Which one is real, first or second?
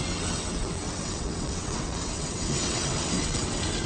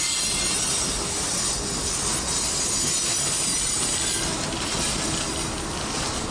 second